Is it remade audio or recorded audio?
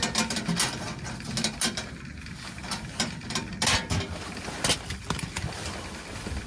recorded